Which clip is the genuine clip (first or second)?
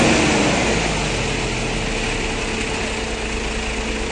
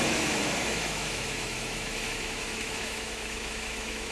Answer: first